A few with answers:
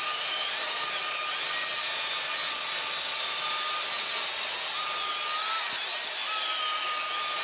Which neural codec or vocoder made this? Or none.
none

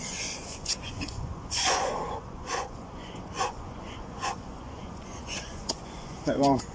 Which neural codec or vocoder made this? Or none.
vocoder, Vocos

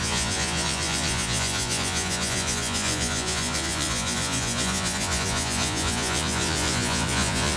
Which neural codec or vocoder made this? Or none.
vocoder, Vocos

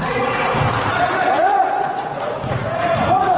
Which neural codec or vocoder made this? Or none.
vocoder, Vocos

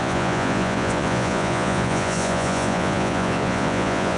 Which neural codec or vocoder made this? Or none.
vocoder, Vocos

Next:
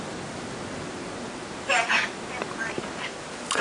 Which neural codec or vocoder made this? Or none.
none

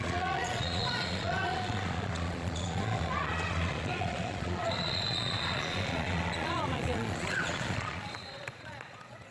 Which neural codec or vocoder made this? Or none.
vocoder, Vocos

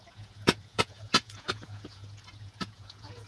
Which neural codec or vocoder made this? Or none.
vocoder, Vocos